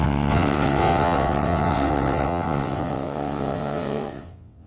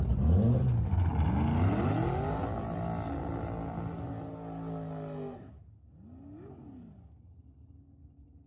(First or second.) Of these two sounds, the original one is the second